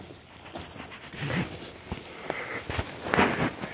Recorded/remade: recorded